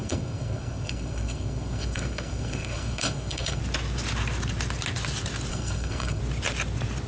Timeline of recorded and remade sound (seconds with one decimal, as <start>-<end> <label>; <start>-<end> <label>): 0.0-3.6 remade; 3.6-5.5 recorded; 5.5-6.2 remade; 6.2-7.1 recorded